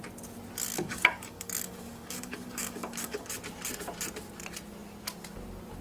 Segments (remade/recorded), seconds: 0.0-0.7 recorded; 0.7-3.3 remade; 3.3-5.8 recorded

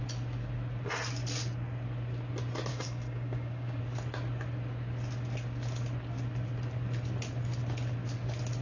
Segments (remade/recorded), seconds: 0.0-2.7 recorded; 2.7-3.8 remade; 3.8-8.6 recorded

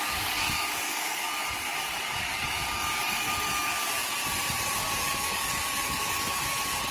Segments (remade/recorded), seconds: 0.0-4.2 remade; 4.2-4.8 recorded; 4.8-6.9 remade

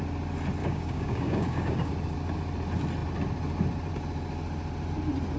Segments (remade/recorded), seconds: 0.0-0.6 recorded; 0.6-1.9 remade; 1.9-5.4 recorded

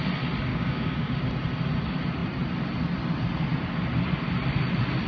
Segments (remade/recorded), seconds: 0.0-0.5 recorded; 0.5-1.2 remade; 1.2-5.1 recorded